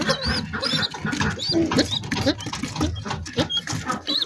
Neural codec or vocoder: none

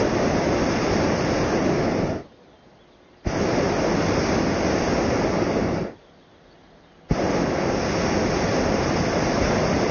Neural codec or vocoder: none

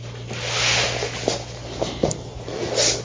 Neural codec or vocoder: none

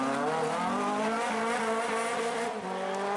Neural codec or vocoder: none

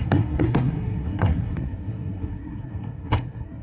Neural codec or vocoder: codec, SNAC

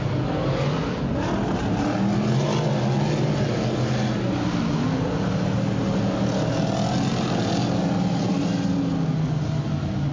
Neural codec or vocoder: none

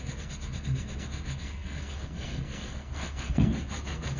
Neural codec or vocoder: codec, SNAC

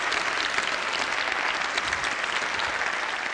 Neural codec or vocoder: none